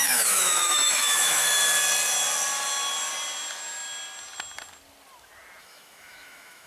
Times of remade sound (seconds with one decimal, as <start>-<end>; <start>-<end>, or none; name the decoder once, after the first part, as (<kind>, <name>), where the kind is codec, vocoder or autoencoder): 0.0-1.6 (autoencoder, DAC-VAE); 5.6-6.7